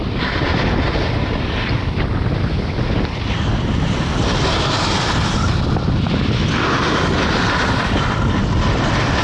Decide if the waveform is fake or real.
real